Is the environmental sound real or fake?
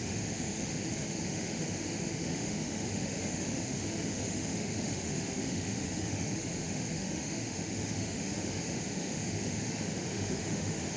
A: fake